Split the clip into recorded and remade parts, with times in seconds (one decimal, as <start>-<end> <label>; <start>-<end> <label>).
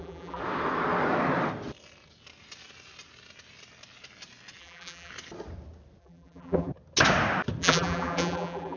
0.0-0.4 remade; 0.4-4.6 recorded; 4.6-5.1 remade; 5.1-6.0 recorded; 6.0-6.7 remade; 6.7-7.6 recorded; 7.6-8.8 remade